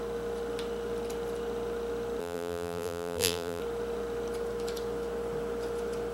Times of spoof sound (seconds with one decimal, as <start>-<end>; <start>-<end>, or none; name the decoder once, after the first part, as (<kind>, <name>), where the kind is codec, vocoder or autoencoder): 2.2-3.6 (vocoder, BigVGAN v2)